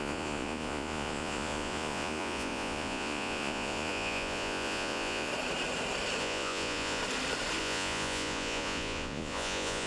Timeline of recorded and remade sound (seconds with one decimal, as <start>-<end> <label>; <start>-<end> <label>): 0.0-5.3 remade; 5.3-6.2 recorded; 6.2-7.0 remade; 7.0-7.6 recorded; 7.6-9.9 remade